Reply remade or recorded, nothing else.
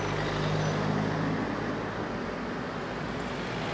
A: recorded